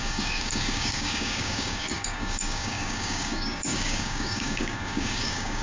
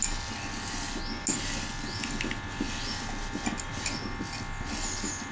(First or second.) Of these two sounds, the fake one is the first